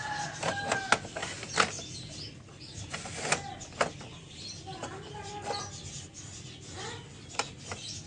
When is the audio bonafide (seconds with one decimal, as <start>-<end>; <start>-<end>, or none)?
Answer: 0.0-8.1